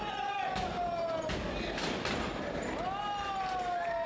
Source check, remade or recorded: recorded